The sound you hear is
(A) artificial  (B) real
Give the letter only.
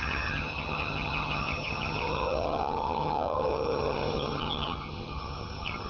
A